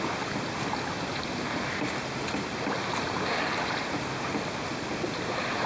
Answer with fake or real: real